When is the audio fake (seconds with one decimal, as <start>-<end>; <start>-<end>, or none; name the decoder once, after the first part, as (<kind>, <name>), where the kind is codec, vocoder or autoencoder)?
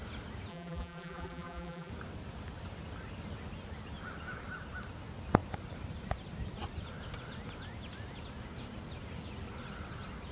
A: 0.5-1.9 (vocoder, BigVGAN v2)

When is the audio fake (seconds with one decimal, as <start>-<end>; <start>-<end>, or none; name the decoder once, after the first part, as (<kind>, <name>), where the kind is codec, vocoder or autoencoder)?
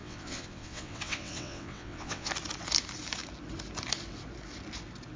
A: 0.0-2.3 (vocoder, WaveNeXt)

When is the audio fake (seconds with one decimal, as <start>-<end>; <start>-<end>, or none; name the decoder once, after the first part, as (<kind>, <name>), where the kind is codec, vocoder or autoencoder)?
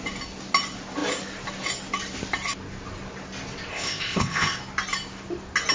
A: 3.7-4.6 (codec, ZipCodec)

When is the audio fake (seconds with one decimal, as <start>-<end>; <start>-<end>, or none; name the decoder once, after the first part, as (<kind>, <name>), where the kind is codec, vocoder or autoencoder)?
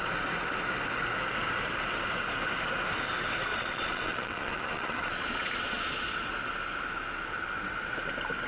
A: 3.5-6.1 (vocoder, Vocos)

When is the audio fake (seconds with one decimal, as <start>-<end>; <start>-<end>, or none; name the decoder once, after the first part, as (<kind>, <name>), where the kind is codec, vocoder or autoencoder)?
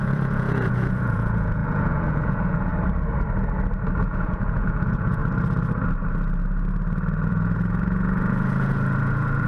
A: 0.0-2.7 (vocoder, Vocos); 4.0-5.2; 7.3-9.5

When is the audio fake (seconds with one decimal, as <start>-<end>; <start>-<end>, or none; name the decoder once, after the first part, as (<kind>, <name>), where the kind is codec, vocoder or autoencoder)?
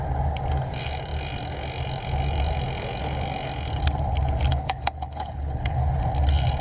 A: 4.5-5.9 (codec, HILCodec)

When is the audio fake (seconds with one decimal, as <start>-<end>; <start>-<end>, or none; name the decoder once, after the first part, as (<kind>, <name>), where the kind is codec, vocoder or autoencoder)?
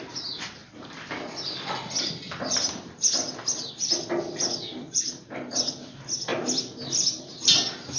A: 0.6-3.7 (vocoder, BigVGAN v2); 4.7-5.5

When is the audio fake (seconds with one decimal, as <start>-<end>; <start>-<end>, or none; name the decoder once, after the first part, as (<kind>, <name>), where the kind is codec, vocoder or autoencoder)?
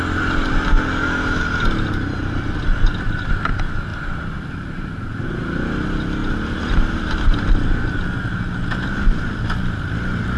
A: 3.9-5.3 (vocoder, BigVGAN v2); 6.2-7.5